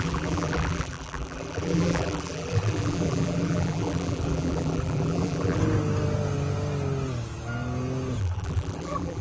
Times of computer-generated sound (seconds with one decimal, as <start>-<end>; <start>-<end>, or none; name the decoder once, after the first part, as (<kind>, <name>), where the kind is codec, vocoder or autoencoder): 0.0-5.6 (vocoder, BigVGAN v2); 8.2-9.2